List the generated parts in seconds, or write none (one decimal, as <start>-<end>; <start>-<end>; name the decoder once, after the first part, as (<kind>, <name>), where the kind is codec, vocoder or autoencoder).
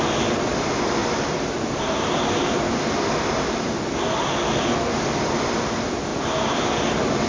1.0-3.8 (vocoder, BigVGAN v2); 6.1-6.6